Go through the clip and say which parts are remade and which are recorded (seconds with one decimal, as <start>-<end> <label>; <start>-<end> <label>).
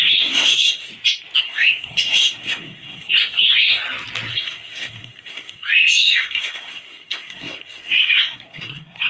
0.0-0.9 remade; 0.9-1.4 recorded; 1.4-3.8 remade; 3.8-4.3 recorded; 4.3-9.1 remade